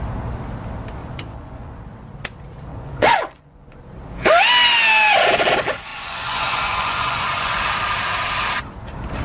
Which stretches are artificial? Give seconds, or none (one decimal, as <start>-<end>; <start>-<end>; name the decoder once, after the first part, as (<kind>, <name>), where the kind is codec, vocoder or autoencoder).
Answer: 1.0-1.8 (vocoder, Vocos); 2.7-3.8; 5.9-7.6